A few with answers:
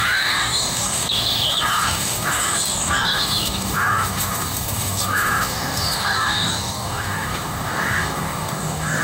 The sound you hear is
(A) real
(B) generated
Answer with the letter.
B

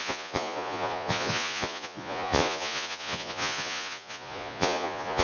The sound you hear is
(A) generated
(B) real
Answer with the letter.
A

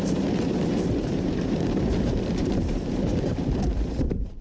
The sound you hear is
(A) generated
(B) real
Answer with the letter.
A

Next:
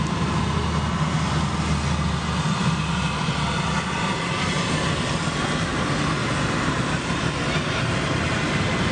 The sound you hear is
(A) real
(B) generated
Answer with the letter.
A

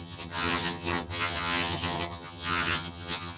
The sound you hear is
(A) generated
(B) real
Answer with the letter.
A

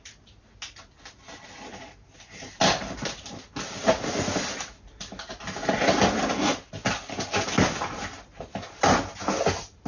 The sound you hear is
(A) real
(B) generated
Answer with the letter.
A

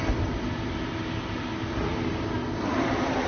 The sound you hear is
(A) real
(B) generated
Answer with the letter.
A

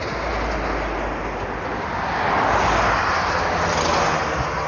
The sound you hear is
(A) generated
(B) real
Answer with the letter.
B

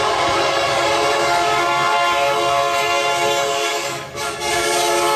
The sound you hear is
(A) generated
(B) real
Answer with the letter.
A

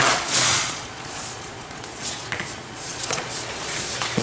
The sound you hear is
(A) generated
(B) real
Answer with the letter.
A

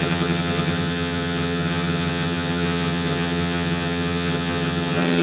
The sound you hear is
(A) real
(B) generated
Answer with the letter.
B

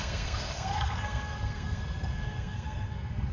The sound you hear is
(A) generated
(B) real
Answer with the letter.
A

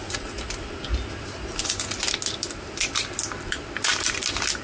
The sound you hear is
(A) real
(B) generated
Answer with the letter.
A